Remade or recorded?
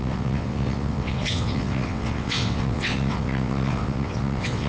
remade